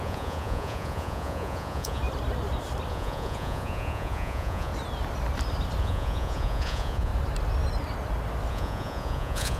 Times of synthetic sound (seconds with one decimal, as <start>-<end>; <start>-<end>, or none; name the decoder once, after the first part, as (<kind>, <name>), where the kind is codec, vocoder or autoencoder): 0.0-2.0 (vocoder, Vocos); 2.9-4.7; 5.8-7.1; 8.5-9.6